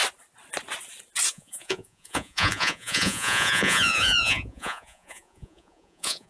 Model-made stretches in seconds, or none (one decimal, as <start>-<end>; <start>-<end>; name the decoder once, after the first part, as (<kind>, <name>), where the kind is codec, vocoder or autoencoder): 1.3-6.3 (vocoder, Vocos)

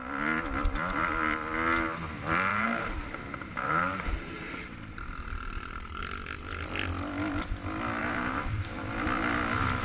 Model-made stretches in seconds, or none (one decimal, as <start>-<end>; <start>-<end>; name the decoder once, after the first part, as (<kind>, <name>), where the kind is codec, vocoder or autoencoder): 2.5-6.0 (vocoder, BigVGAN v2); 8.0-8.8